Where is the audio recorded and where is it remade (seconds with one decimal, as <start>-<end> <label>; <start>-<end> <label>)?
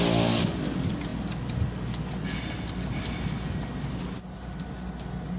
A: 0.0-5.4 recorded